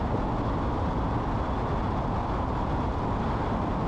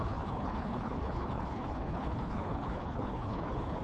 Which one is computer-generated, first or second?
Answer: second